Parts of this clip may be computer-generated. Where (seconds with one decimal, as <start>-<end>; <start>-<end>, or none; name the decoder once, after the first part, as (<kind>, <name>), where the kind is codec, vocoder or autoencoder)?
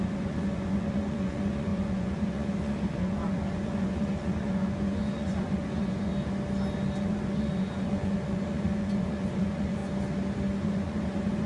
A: 0.0-6.1 (vocoder, Vocos); 7.0-9.8; 10.6-11.5